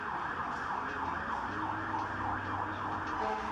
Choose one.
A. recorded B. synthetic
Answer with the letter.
A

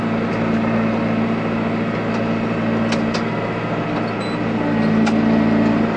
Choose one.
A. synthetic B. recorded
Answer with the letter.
B